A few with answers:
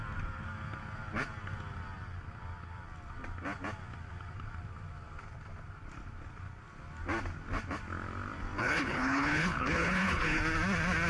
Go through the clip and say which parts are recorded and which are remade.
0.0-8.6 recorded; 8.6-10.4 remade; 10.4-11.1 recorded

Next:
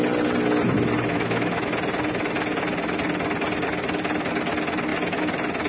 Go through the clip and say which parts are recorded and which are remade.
0.0-1.1 recorded; 1.1-1.7 remade; 1.7-5.7 recorded

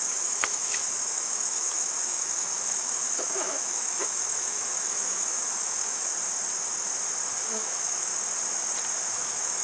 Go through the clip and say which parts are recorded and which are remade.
0.0-6.1 remade; 6.1-7.3 recorded; 7.3-8.1 remade; 8.1-9.1 recorded; 9.1-9.6 remade

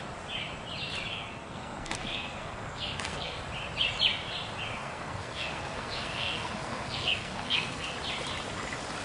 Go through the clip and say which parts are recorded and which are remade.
0.0-1.1 recorded; 1.1-3.4 remade; 3.4-4.7 recorded; 4.7-7.9 remade; 7.9-9.0 recorded